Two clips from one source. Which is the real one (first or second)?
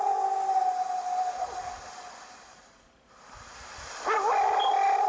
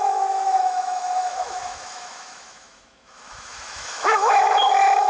first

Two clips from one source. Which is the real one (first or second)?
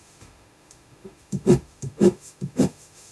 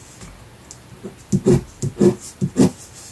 second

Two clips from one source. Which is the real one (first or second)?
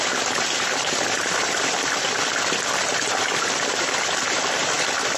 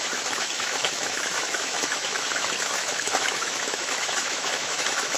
first